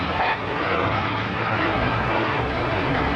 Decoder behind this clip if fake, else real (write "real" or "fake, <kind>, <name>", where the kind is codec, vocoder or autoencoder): fake, codec, SNAC